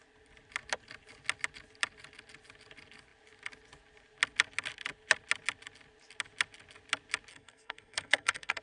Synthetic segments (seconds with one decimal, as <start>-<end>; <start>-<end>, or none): 7.3-8.6